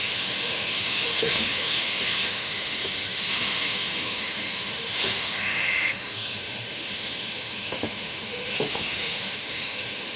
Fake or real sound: fake